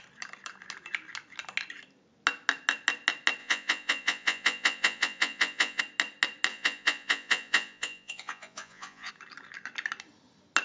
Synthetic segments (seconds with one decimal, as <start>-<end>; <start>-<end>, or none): 3.4-5.8; 6.5-9.1